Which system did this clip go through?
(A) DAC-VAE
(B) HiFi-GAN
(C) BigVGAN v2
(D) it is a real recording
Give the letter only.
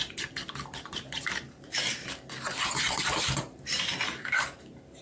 C